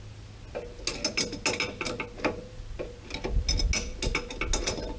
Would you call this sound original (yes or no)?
yes